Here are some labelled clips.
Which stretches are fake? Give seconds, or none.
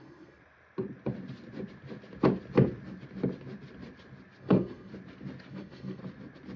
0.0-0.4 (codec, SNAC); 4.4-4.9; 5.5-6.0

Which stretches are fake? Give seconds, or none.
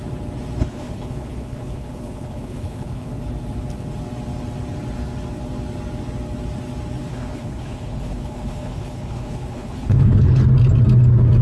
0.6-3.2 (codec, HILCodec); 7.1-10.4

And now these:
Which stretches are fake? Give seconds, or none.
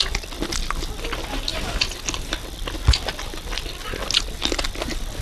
none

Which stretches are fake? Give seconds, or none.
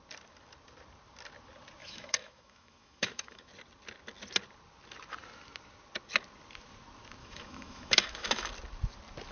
1.8-3.5 (autoencoder, DAC-VAE); 7.2-8.5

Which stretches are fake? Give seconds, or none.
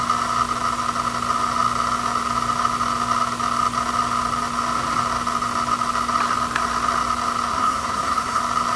7.5-8.4 (codec, SNAC)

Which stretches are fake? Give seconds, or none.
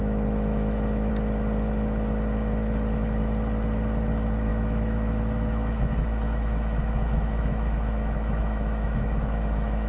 0.0-1.1 (autoencoder, DAC-VAE); 4.5-9.9